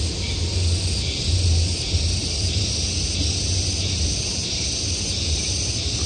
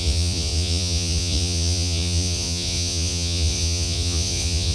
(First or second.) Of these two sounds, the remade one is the second